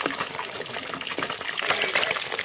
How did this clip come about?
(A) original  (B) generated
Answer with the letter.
B